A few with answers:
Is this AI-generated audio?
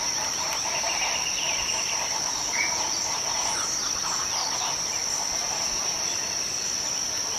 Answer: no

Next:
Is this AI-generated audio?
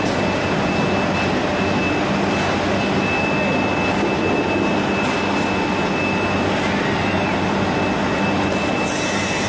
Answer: no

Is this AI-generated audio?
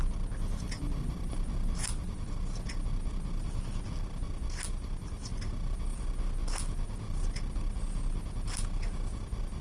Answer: no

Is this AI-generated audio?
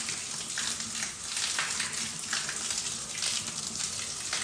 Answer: no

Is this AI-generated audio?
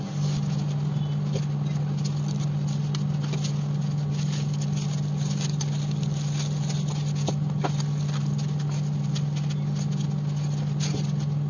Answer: no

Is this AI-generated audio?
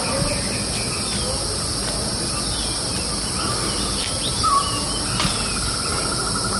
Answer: no